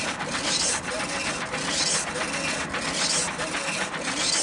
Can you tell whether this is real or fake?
real